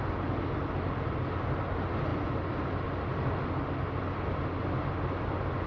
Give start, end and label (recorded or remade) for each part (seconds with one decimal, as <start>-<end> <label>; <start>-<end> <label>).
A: 0.0-5.7 recorded